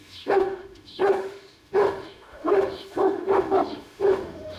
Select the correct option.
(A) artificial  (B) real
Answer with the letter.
A